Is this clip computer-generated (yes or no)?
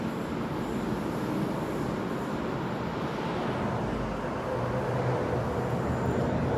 no